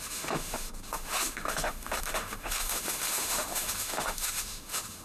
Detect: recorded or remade remade